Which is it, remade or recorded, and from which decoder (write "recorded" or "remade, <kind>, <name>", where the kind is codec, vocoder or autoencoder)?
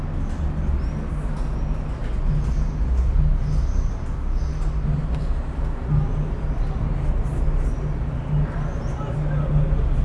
recorded